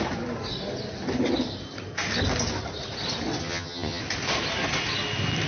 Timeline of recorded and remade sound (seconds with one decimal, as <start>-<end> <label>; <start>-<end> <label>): 0.0-3.4 recorded; 3.4-4.0 remade; 4.0-5.5 recorded